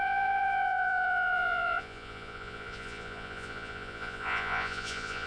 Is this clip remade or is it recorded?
remade